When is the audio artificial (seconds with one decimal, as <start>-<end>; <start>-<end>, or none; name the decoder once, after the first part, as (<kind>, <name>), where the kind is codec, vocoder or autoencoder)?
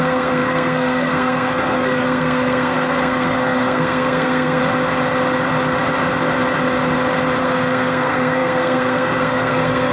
0.0-4.6 (codec, SNAC); 7.4-9.9